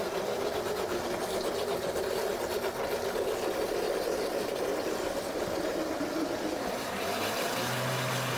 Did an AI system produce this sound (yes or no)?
no